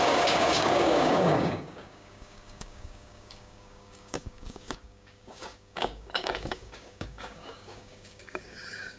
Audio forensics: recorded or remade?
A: remade